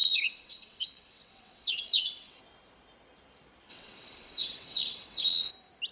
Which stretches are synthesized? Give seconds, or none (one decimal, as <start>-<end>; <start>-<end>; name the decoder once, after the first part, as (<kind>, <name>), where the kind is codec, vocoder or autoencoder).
0.0-2.4 (vocoder, WaveNeXt); 3.7-5.5